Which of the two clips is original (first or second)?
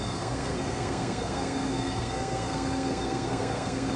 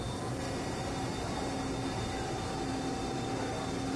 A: second